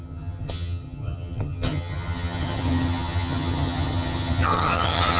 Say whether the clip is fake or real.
fake